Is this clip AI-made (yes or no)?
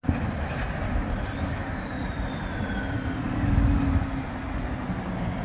no